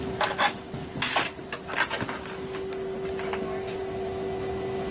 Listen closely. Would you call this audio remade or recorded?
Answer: recorded